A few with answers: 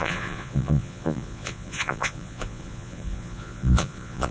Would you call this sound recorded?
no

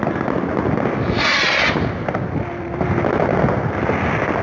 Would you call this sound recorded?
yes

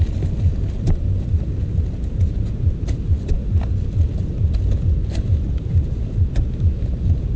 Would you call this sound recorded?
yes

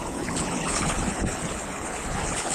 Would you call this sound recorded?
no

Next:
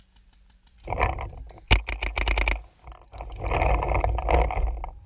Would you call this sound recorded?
yes